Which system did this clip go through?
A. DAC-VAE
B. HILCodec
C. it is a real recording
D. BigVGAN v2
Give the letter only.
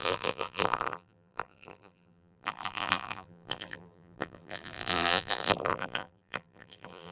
D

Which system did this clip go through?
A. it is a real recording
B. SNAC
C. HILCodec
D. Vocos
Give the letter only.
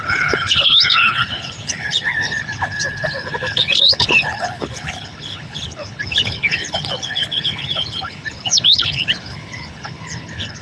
C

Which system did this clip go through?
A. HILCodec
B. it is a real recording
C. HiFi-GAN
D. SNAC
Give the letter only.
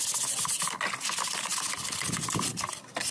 B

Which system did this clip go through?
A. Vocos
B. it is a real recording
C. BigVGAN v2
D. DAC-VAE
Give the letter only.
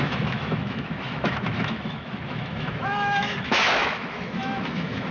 D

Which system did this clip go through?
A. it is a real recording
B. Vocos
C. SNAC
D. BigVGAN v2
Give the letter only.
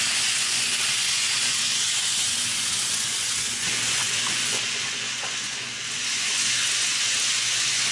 B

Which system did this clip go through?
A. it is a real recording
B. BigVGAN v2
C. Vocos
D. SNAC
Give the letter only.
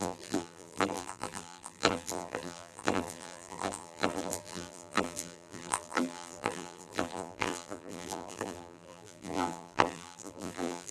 B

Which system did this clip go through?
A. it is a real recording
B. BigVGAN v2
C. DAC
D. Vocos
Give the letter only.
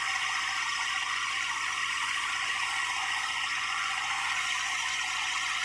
D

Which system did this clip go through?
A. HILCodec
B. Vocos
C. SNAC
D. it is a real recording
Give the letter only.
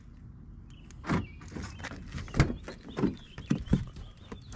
D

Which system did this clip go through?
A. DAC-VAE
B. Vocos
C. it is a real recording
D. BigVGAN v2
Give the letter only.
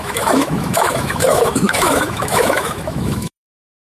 A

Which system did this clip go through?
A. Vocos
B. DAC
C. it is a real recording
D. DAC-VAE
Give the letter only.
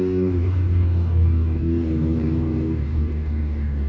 B